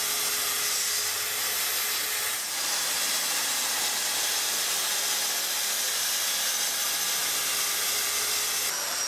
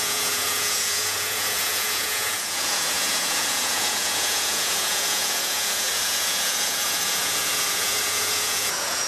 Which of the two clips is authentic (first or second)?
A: first